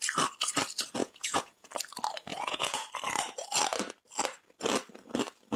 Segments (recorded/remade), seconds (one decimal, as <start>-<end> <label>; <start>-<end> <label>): 0.0-1.0 recorded; 1.0-1.7 remade; 1.7-2.3 recorded; 2.3-2.9 remade; 2.9-5.6 recorded